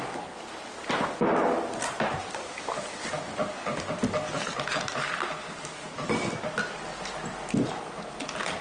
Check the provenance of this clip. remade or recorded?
recorded